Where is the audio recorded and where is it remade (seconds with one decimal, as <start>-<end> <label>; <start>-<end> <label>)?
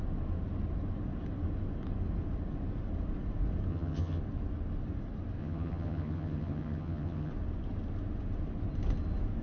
0.0-3.7 recorded; 3.7-4.2 remade; 4.2-5.4 recorded; 5.4-7.3 remade; 7.3-9.4 recorded